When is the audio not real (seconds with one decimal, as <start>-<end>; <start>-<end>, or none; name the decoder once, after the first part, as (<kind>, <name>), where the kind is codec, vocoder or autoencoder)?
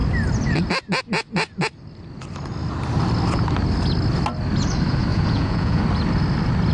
5.1-5.8 (vocoder, Vocos)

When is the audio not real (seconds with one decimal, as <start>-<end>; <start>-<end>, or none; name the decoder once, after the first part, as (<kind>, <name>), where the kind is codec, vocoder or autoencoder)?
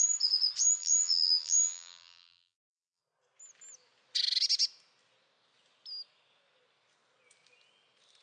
0.8-3.0 (vocoder, BigVGAN v2)